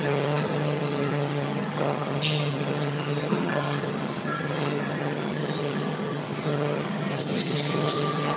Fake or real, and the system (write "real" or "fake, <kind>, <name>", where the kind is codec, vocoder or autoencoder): fake, vocoder, HiFi-GAN